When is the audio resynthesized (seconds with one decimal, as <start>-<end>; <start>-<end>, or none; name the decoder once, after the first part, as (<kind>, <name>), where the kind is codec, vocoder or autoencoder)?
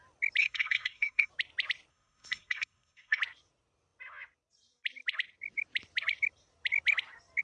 0.4-1.3 (codec, SNAC); 1.9-3.2